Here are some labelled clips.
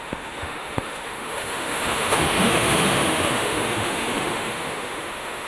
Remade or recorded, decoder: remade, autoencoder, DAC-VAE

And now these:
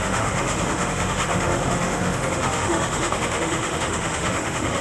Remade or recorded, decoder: remade, autoencoder, DAC-VAE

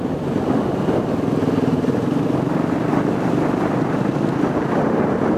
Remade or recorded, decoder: recorded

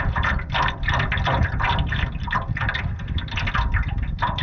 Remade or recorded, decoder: recorded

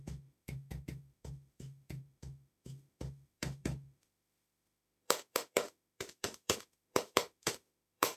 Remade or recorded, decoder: remade, autoencoder, DAC-VAE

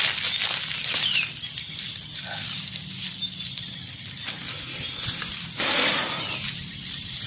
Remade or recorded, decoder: recorded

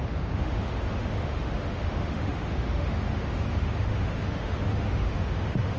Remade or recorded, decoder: remade, autoencoder, DAC-VAE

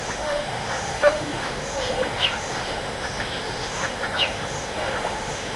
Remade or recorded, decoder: remade, autoencoder, DAC-VAE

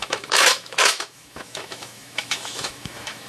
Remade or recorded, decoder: remade, autoencoder, DAC-VAE